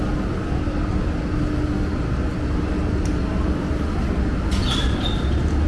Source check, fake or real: real